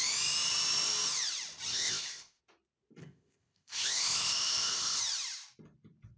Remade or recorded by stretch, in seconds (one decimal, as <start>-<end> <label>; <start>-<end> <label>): 0.0-1.7 recorded; 1.7-2.4 remade; 2.4-3.0 recorded; 3.0-5.0 remade; 5.0-6.2 recorded